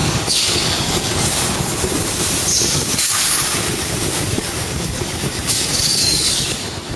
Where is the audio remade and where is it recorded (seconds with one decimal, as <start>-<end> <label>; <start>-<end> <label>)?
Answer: 0.0-1.6 remade; 1.6-2.5 recorded; 2.5-6.6 remade; 6.6-7.0 recorded